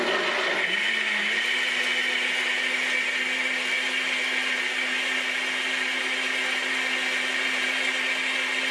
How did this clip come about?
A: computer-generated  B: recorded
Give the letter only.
B